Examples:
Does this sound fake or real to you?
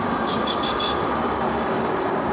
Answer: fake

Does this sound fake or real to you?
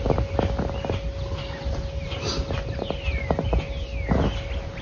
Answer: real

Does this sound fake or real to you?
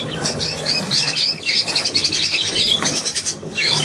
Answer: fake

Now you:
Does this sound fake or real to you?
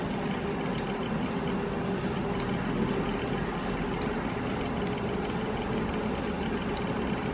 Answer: real